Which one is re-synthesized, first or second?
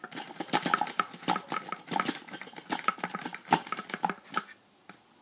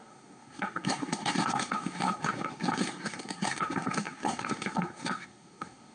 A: second